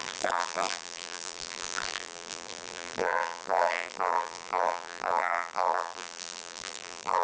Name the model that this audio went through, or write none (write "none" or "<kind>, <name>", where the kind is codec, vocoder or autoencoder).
vocoder, BigVGAN v2